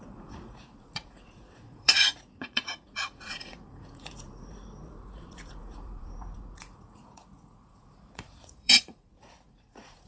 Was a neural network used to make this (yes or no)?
yes